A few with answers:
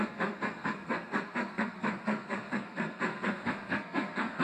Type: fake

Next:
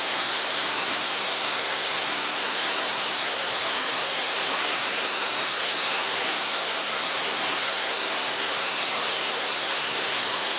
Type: fake